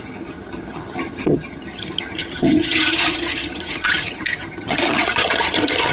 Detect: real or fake fake